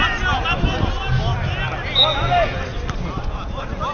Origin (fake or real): real